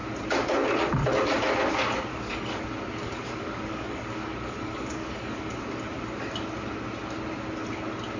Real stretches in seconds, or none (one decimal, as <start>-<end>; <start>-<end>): 0.0-2.1; 2.6-3.0; 5.5-8.2